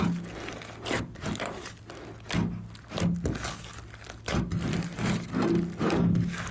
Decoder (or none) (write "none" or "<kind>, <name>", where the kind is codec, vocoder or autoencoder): none